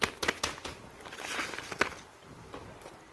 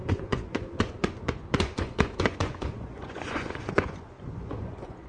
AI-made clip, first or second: second